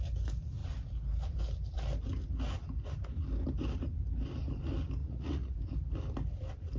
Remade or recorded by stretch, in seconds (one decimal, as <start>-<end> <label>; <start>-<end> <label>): 0.0-5.0 recorded; 5.0-5.6 remade; 5.6-6.8 recorded